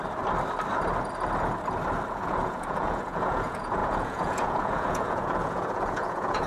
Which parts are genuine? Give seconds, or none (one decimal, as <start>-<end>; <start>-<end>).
0.0-2.1